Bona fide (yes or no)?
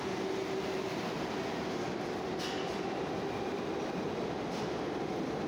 yes